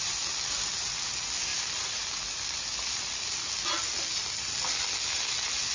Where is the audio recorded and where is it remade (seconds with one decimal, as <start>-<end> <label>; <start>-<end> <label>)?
0.0-5.7 recorded